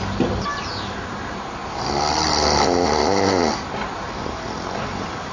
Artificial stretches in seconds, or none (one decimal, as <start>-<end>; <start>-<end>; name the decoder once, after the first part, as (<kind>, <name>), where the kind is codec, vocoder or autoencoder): none